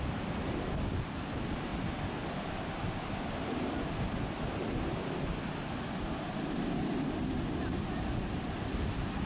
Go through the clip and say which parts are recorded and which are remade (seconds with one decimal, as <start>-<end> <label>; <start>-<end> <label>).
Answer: 0.0-9.3 recorded